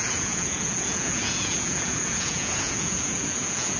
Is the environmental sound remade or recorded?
remade